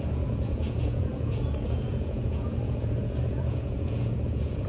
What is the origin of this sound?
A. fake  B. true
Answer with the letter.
A